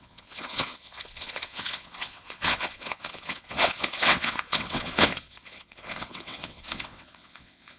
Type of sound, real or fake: fake